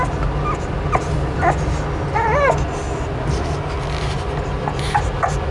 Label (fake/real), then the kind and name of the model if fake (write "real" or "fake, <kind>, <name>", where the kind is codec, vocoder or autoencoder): real